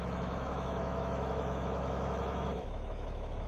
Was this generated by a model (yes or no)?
yes